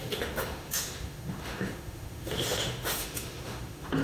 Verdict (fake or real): fake